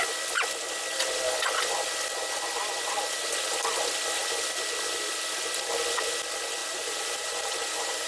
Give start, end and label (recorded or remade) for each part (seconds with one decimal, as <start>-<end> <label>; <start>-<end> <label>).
0.0-6.6 recorded; 6.6-8.1 remade